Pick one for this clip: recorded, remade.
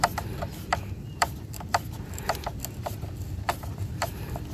remade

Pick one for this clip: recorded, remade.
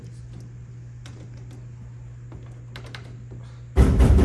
recorded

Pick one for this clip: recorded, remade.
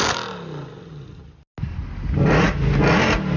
recorded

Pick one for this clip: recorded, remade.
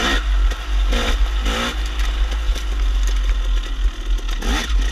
recorded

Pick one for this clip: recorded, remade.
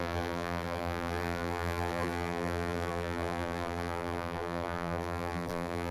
remade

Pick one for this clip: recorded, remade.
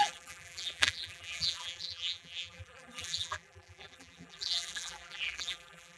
remade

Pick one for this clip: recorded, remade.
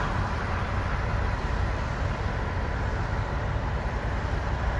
remade